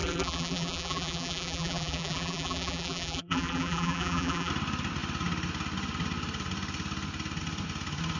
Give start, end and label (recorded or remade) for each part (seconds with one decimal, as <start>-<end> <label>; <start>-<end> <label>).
0.0-4.5 remade; 4.5-8.2 recorded